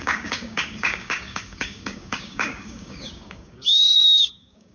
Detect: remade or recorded remade